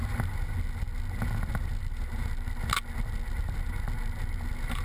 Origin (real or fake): real